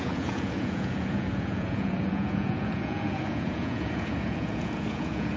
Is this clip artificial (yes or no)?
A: yes